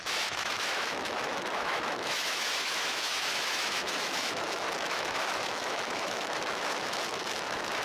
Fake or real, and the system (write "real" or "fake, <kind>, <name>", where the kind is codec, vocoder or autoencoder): fake, autoencoder, DAC-VAE